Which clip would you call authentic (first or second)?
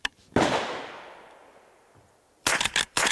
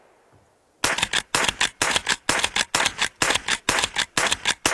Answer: second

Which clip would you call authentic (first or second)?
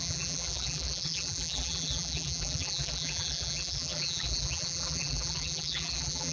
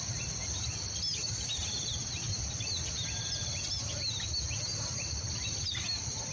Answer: second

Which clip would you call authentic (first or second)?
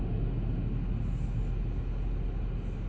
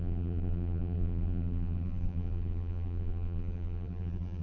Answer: first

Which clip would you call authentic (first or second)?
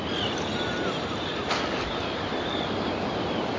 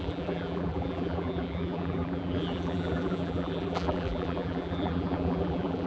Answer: first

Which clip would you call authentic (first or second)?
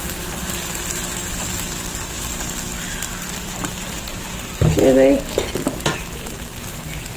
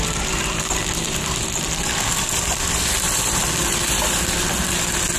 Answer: first